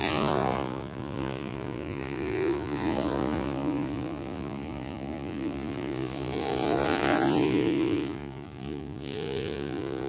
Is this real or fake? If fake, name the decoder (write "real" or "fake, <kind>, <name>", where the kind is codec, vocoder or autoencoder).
fake, vocoder, Vocos